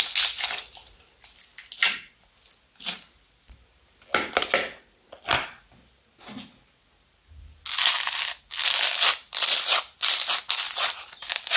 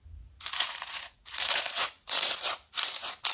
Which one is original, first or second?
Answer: first